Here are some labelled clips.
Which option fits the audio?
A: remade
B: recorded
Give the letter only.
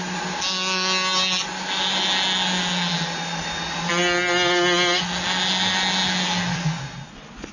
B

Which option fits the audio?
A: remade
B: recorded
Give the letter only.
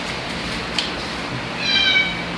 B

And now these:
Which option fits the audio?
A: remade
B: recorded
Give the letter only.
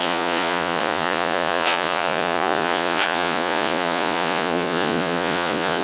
A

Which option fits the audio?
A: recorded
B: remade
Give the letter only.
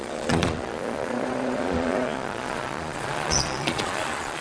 B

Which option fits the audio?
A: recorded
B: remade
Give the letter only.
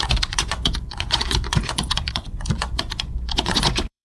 B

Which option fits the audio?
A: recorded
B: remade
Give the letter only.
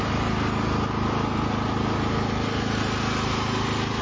A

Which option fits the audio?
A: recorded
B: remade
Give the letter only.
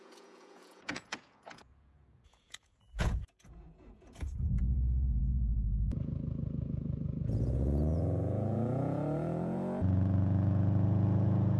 B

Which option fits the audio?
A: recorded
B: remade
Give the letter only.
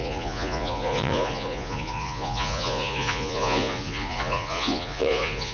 B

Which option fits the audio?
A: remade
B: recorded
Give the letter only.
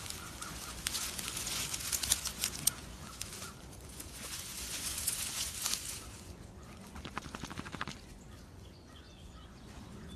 A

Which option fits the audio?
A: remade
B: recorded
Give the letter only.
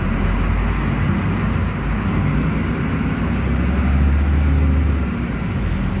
B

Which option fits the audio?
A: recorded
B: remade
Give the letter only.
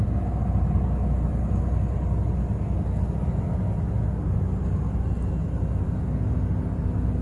A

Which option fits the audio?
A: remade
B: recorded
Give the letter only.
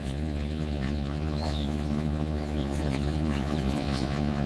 A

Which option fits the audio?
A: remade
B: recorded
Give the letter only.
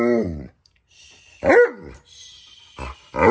B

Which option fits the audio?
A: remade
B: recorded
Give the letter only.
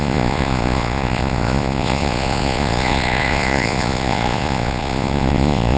A